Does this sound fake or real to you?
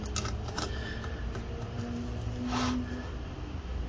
real